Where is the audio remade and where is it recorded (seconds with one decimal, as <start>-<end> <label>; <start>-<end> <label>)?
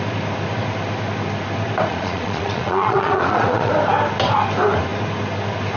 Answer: 0.0-1.9 recorded; 1.9-3.7 remade; 3.7-5.8 recorded